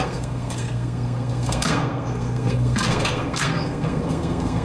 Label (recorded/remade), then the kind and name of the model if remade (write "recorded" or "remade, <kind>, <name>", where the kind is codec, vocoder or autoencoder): remade, codec, SNAC